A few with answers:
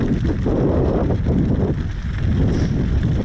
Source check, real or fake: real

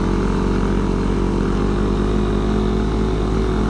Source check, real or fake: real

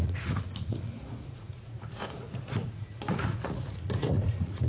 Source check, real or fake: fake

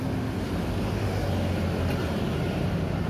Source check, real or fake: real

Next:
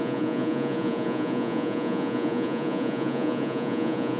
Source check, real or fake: fake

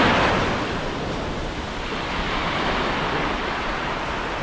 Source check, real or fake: real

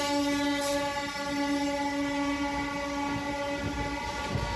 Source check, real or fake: real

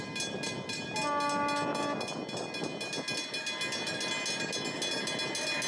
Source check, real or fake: real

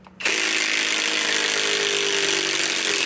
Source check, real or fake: real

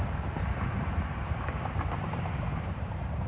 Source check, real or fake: fake